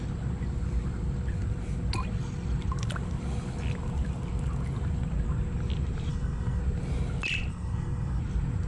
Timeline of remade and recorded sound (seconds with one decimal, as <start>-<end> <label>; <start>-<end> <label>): 0.0-6.1 recorded; 6.1-6.6 remade; 6.6-7.5 recorded; 7.5-8.2 remade; 8.2-8.7 recorded